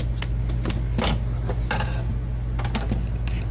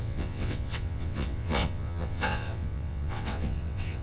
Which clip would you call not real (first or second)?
second